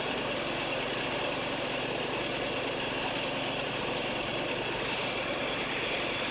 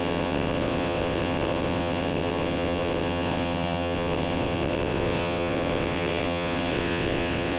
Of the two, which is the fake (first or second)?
second